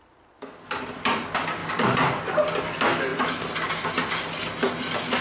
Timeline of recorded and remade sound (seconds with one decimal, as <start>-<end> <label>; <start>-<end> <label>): 0.0-1.6 recorded; 1.6-2.2 remade; 2.2-5.2 recorded